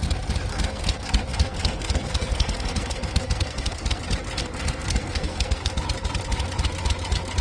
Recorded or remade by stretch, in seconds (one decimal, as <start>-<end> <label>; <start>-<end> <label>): 0.0-0.5 recorded; 0.5-4.0 remade; 4.0-4.4 recorded; 4.4-5.7 remade; 5.7-7.4 recorded